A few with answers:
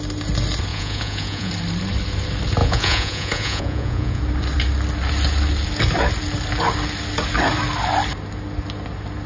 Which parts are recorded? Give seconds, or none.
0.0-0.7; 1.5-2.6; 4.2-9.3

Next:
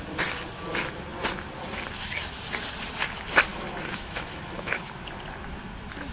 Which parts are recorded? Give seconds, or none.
0.0-3.5; 4.8-6.1

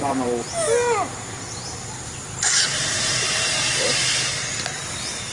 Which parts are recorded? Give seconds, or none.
0.0-5.3

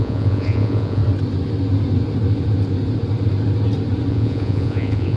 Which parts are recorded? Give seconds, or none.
1.0-4.1